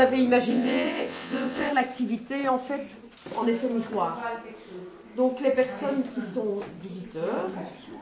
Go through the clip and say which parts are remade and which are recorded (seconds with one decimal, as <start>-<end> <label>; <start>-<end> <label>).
0.0-0.5 recorded; 0.5-1.7 remade; 1.7-8.0 recorded